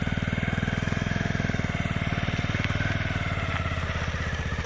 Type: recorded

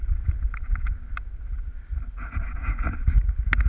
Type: recorded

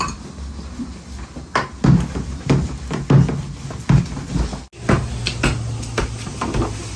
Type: recorded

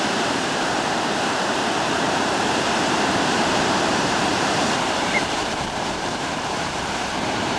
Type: remade